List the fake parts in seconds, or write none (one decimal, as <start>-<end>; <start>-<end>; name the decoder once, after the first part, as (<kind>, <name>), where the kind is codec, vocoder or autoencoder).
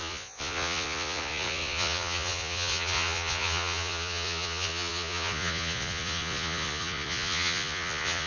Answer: 0.0-8.3 (vocoder, Vocos)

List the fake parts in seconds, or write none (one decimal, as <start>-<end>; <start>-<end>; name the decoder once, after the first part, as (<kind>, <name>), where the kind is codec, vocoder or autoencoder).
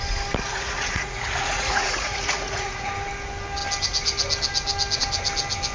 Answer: 0.5-2.9 (vocoder, Vocos)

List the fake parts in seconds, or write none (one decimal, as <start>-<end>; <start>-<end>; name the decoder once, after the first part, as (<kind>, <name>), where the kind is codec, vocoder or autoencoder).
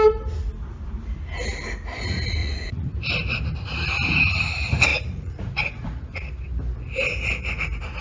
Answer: 2.4-2.9 (vocoder, Vocos); 4.9-6.5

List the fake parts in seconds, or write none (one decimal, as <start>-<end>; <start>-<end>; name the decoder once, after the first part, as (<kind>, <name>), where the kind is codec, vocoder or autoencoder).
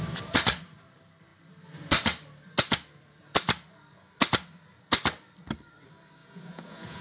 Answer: 6.2-7.0 (vocoder, Vocos)